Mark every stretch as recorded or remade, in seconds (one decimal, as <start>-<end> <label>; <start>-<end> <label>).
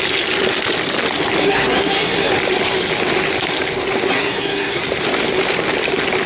0.0-1.4 recorded; 1.4-2.3 remade; 2.3-4.1 recorded; 4.1-4.8 remade; 4.8-6.3 recorded